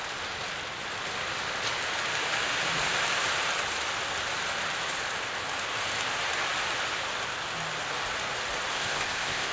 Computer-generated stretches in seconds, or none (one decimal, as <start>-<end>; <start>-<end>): 8.7-9.5